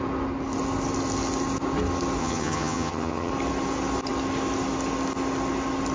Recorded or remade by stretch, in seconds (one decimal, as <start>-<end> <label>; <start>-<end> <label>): 0.0-2.2 recorded; 2.2-3.3 remade; 3.3-5.9 recorded